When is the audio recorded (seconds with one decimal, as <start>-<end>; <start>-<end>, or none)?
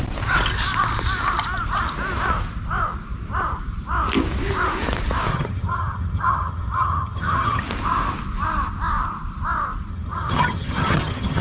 0.0-5.3; 7.6-9.9